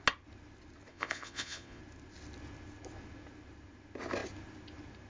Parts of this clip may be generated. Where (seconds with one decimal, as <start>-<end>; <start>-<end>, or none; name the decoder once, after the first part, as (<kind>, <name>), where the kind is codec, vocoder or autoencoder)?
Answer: 0.9-1.8 (vocoder, Vocos)